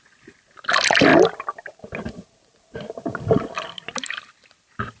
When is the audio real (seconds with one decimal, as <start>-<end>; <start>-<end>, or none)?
0.0-5.0